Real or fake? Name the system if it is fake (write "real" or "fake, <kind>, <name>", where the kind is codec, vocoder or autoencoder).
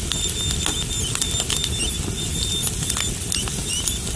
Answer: real